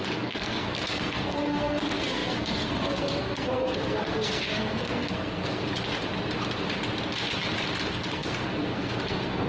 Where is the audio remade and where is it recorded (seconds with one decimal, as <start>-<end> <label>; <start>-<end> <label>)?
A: 0.0-5.6 remade; 5.6-7.9 recorded; 7.9-9.5 remade